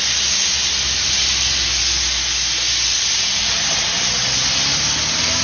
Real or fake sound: real